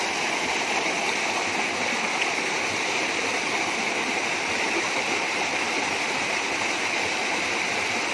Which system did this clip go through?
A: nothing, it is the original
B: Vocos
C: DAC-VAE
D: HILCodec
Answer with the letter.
A